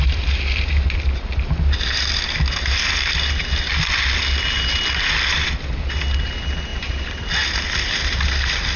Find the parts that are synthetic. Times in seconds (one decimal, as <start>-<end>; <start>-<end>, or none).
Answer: 6.7-7.3